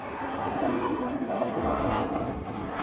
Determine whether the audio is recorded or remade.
remade